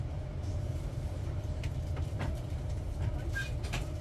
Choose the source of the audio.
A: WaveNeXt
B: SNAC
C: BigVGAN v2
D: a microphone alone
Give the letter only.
C